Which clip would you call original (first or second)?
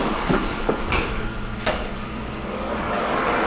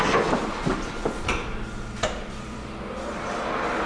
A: second